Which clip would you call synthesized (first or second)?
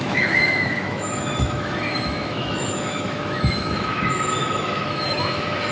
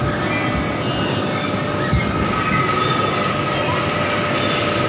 first